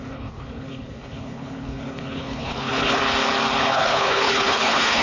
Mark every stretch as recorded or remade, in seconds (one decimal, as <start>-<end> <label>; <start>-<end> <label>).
0.0-3.0 remade; 3.0-3.6 recorded; 3.6-5.0 remade